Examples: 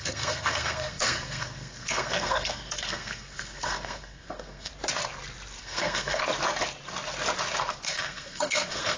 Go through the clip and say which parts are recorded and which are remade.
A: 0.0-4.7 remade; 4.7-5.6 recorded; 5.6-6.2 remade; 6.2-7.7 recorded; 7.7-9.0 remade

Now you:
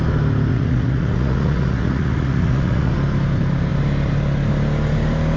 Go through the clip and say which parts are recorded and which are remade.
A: 0.0-0.5 recorded; 0.5-2.9 remade; 2.9-5.4 recorded

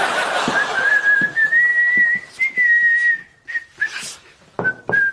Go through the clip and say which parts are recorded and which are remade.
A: 0.0-5.1 recorded

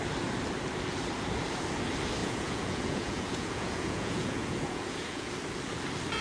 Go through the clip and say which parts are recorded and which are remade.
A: 0.0-2.2 recorded; 2.2-5.3 remade; 5.3-6.2 recorded

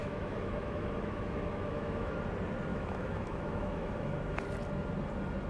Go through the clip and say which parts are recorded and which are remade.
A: 0.0-2.1 remade; 2.1-2.7 recorded; 2.7-4.3 remade; 4.3-5.5 recorded

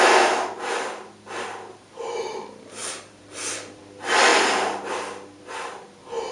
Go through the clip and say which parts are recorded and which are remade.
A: 0.0-2.8 recorded; 2.8-3.8 remade; 3.8-6.3 recorded